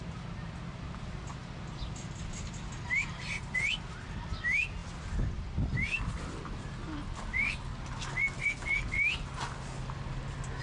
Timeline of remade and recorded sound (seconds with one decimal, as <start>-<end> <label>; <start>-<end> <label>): 0.0-10.6 recorded

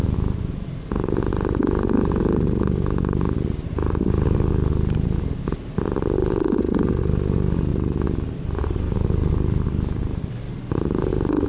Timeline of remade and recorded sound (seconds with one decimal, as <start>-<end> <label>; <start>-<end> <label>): 0.0-7.7 recorded; 7.7-10.6 remade; 10.6-11.5 recorded

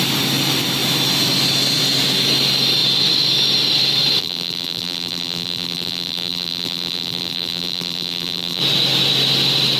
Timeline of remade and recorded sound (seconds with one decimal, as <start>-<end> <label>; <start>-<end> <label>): 0.0-4.2 recorded; 4.2-8.6 remade; 8.6-9.8 recorded

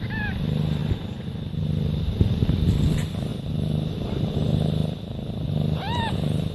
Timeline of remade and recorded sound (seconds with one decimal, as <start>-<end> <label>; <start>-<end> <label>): 0.0-4.8 remade; 4.8-5.5 recorded; 5.5-6.5 remade

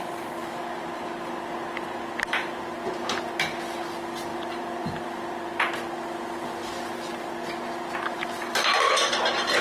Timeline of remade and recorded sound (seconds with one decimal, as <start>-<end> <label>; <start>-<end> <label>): 0.0-4.3 recorded; 4.3-5.3 remade; 5.3-9.6 recorded

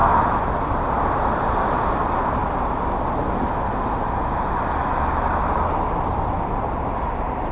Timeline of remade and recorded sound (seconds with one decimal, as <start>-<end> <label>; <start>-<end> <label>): 0.0-2.4 remade; 2.4-4.2 recorded; 4.2-7.5 remade